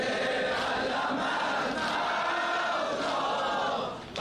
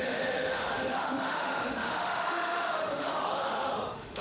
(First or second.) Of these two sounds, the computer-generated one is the second